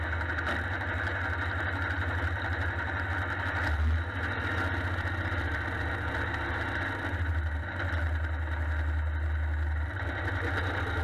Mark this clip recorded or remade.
recorded